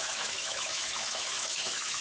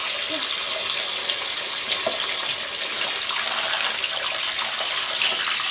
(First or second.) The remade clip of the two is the first